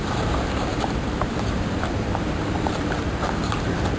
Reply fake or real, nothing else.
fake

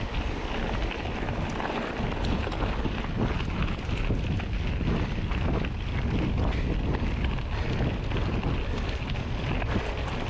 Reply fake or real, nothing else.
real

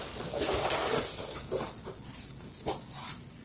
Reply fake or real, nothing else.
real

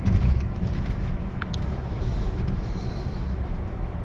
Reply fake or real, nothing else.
fake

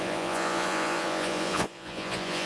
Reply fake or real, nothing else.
fake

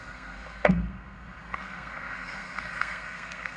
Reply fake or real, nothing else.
fake